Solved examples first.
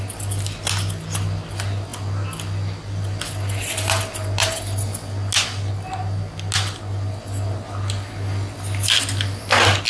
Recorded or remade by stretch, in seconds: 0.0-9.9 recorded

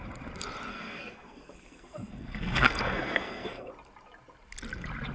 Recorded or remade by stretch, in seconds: 0.0-0.7 recorded; 0.7-3.7 remade; 3.7-5.1 recorded

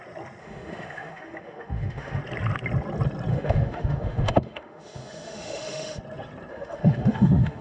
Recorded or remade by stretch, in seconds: 0.0-0.4 recorded; 0.4-2.2 remade; 2.2-3.3 recorded; 3.3-6.0 remade; 6.0-6.5 recorded; 6.5-7.6 remade

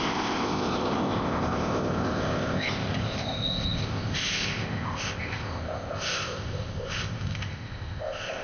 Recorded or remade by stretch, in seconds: 0.0-8.4 remade

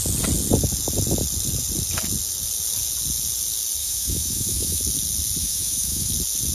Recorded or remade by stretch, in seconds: 0.0-3.8 recorded; 3.8-4.8 remade; 4.8-5.4 recorded; 5.4-6.1 remade; 6.1-6.5 recorded

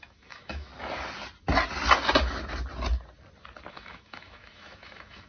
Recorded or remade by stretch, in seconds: 0.0-0.7 remade; 0.7-3.7 recorded; 3.7-5.3 remade

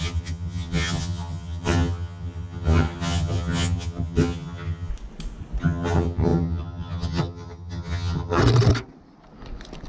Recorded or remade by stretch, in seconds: 0.0-4.9 remade; 4.9-5.6 recorded; 5.6-8.4 remade; 8.4-9.9 recorded

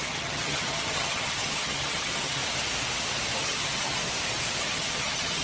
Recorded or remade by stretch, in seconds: 0.0-2.4 remade; 2.4-3.4 recorded; 3.4-4.0 remade; 4.0-4.6 recorded; 4.6-5.4 remade